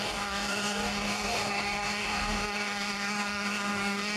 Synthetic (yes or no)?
yes